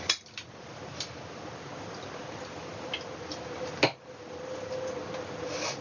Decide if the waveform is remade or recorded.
recorded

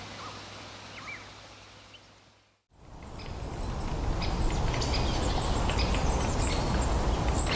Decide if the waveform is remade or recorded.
recorded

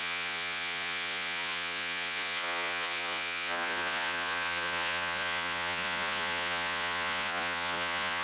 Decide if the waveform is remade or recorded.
remade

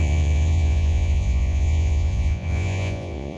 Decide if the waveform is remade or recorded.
remade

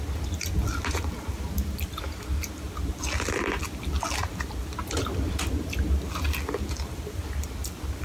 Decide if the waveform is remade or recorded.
recorded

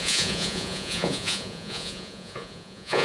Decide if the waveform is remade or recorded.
remade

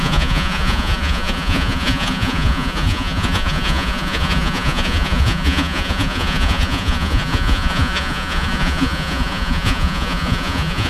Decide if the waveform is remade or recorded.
remade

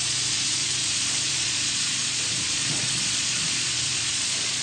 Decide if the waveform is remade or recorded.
remade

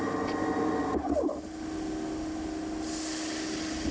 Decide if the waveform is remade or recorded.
recorded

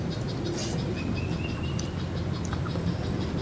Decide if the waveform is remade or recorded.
recorded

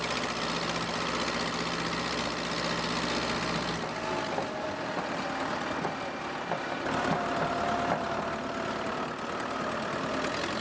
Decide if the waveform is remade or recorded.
recorded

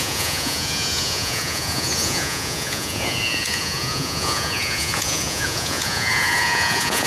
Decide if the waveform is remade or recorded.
remade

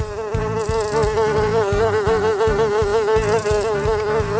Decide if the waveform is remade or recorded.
recorded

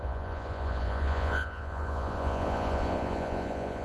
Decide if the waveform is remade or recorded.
remade